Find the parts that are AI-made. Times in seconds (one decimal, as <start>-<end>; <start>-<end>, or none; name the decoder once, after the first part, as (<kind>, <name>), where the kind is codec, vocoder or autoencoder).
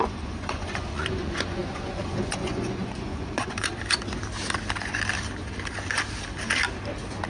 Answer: 0.0-3.7 (vocoder, Vocos)